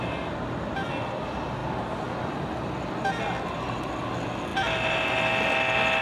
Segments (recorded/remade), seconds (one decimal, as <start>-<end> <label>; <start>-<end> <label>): 0.0-6.0 recorded